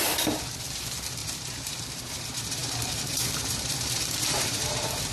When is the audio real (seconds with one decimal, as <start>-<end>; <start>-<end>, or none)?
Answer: none